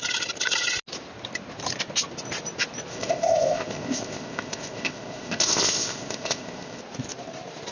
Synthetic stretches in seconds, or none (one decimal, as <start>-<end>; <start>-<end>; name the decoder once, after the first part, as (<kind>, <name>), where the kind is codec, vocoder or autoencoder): 2.9-6.8 (codec, ZipCodec)